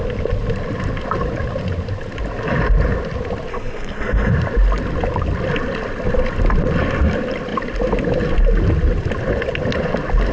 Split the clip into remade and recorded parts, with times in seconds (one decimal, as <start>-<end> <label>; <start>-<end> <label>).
0.0-3.5 recorded; 3.5-4.3 remade; 4.3-10.3 recorded